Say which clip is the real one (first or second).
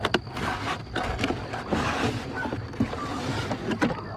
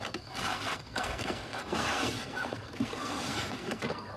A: first